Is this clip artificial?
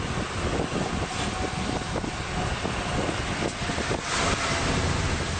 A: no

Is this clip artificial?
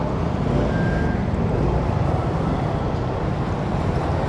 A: no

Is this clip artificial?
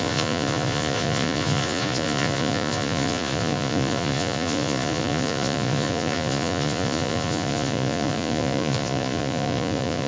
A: yes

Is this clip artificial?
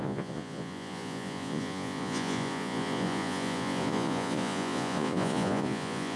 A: yes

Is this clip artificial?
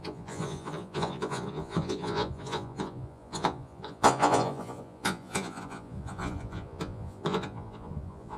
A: yes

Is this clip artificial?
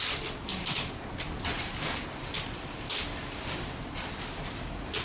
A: no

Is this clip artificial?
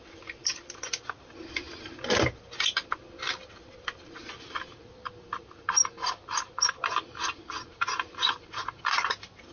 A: no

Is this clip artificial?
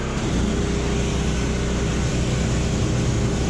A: no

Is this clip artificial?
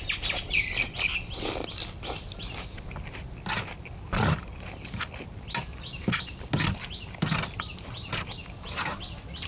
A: no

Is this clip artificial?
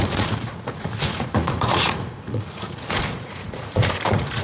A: yes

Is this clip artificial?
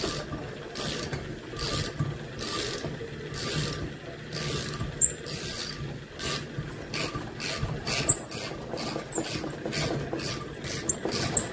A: no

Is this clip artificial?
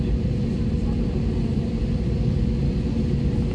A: no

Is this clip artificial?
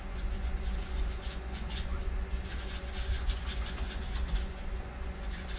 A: yes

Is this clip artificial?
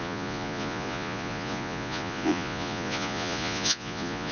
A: yes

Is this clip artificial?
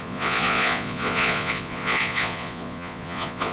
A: yes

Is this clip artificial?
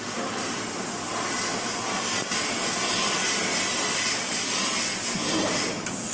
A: no